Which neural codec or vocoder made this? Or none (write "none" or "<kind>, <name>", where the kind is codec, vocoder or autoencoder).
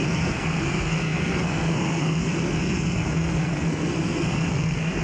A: codec, SNAC